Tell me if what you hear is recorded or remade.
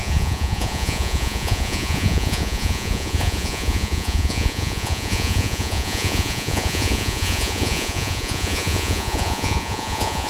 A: remade